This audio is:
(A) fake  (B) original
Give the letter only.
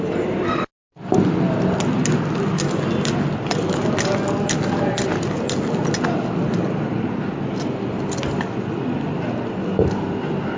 B